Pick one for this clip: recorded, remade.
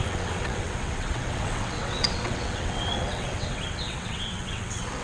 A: remade